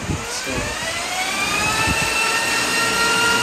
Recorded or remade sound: recorded